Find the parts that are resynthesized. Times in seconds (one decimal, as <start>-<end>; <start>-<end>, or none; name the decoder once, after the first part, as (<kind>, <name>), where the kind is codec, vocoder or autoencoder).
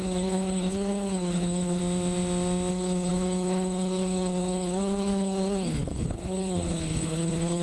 0.0-1.8 (codec, HILCodec); 2.7-7.6